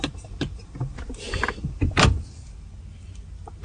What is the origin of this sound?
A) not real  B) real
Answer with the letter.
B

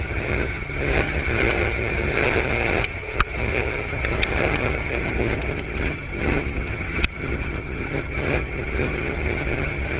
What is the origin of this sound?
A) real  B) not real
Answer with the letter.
B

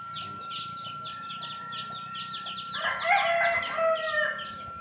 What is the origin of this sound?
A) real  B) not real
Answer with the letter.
A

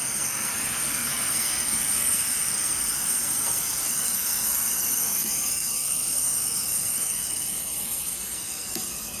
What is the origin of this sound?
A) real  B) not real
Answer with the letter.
B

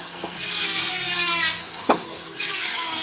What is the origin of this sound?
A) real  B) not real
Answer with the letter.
B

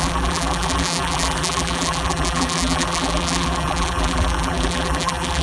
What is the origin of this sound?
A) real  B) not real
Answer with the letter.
B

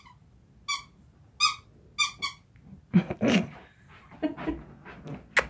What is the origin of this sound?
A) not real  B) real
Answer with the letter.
B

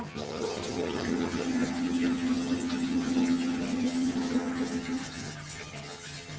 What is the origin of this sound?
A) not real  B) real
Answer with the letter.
A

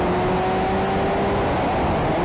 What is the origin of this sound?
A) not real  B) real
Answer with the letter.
B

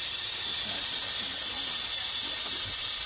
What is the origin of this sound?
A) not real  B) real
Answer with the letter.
B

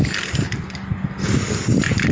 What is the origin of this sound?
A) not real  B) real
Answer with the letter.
B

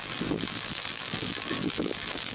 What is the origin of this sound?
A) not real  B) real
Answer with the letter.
A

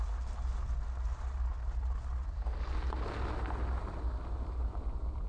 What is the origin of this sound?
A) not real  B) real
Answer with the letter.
B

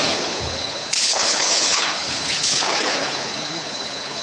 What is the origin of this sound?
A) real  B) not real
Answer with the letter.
B